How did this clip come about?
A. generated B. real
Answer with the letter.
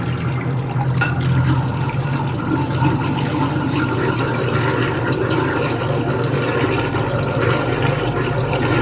B